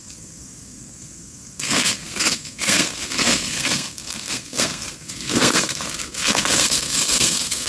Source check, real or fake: fake